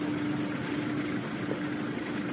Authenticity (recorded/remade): recorded